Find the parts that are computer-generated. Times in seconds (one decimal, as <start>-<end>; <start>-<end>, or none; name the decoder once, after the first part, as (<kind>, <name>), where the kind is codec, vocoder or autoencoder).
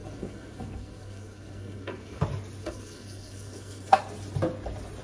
0.0-2.2 (codec, SNAC); 2.6-4.0